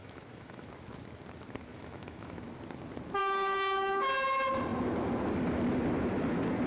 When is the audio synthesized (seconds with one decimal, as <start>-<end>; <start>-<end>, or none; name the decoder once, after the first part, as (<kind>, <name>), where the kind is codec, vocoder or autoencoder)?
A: 0.0-0.7 (autoencoder, DAC-VAE); 1.7-2.4; 3.2-4.1